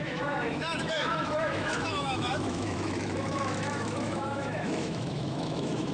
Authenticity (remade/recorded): remade